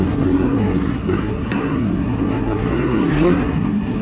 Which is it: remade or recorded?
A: remade